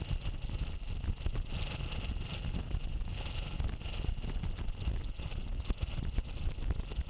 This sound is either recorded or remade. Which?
recorded